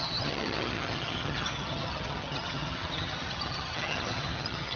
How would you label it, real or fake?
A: fake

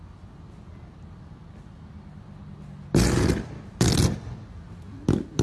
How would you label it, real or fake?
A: real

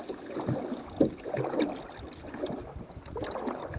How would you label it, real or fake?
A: real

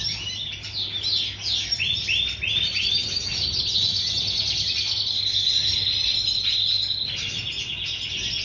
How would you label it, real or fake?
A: real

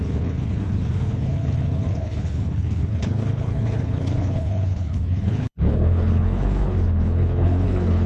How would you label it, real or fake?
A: fake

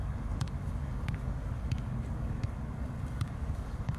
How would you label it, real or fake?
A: fake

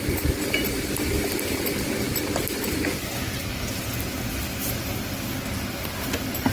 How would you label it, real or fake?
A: real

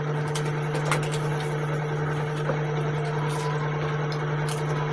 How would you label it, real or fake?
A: real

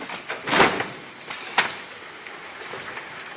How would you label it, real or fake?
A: real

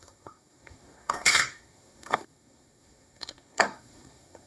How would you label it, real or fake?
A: fake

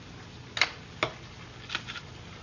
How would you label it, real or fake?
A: real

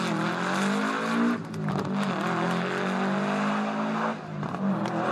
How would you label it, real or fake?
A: real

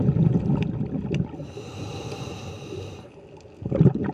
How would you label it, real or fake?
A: real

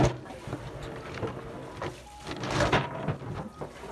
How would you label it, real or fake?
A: real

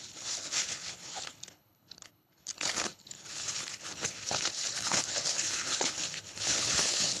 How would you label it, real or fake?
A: fake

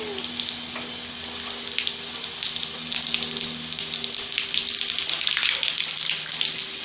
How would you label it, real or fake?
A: real